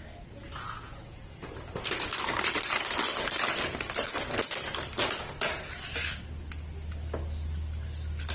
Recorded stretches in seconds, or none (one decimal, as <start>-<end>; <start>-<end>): 0.0-0.5; 1.5-8.3

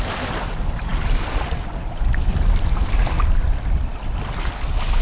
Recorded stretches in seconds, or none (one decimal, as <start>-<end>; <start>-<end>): 0.0-5.0

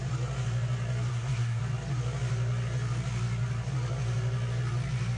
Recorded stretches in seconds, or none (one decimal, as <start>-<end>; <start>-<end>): 0.0-1.1; 1.6-5.2

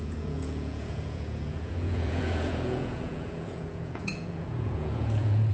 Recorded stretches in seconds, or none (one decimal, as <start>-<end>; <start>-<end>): none

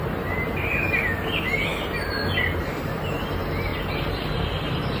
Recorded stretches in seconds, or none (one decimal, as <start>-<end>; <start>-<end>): 0.0-3.7